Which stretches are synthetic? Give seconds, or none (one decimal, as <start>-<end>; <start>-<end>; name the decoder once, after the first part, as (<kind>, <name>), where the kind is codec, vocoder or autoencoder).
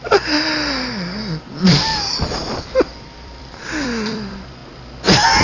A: 1.5-4.6 (vocoder, BigVGAN v2)